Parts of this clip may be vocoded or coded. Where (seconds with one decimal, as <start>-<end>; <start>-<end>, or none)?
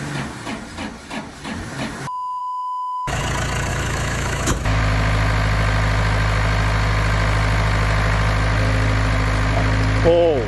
2.4-3.2; 3.7-4.8